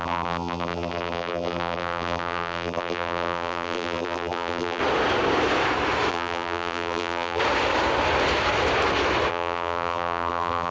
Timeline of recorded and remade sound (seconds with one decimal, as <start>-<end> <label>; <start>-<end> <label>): 0.0-4.8 remade; 4.8-6.1 recorded; 6.1-7.4 remade; 7.4-9.3 recorded; 9.3-10.7 remade